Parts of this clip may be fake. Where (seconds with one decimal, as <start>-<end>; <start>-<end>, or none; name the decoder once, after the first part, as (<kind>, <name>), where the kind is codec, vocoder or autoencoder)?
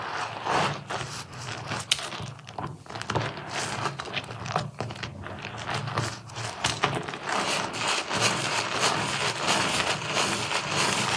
0.0-5.8 (vocoder, BigVGAN v2); 6.8-11.2